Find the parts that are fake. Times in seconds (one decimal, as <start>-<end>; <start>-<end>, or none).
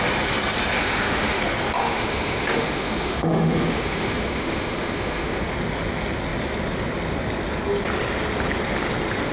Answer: 0.8-1.4; 1.8-5.4